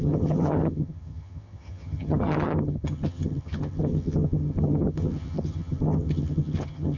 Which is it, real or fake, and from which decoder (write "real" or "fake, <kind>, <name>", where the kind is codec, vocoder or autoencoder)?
fake, vocoder, HiFi-GAN